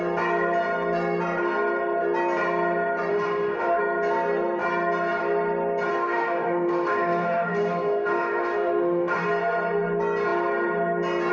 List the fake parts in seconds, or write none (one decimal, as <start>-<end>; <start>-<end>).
3.1-3.8; 5.9-9.3